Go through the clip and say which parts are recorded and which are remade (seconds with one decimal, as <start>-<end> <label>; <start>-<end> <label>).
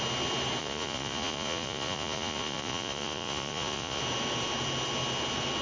0.0-0.6 recorded; 0.6-4.0 remade; 4.0-5.6 recorded